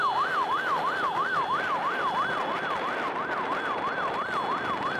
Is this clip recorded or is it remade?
recorded